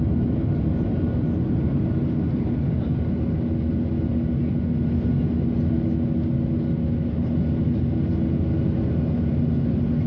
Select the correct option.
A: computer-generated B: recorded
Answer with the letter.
B